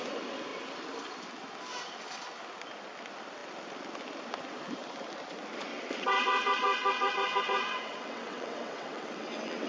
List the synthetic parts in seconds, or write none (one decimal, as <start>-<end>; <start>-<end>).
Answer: 5.7-9.7